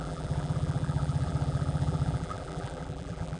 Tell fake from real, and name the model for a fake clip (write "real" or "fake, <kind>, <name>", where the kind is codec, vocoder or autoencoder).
fake, vocoder, BigVGAN v2